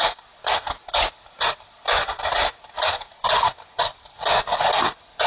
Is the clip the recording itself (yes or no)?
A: no